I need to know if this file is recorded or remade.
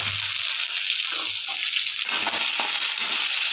recorded